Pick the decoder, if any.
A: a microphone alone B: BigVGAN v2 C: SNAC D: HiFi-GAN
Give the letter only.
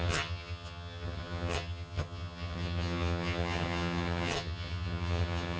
D